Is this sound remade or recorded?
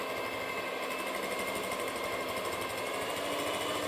recorded